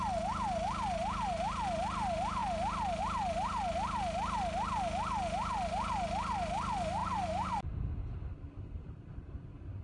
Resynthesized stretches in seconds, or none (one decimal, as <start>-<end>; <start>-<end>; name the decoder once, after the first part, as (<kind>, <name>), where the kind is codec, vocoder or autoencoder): none